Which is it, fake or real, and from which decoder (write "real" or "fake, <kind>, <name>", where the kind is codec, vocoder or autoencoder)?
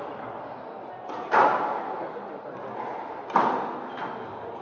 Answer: real